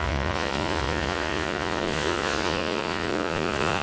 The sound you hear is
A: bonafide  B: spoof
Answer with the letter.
B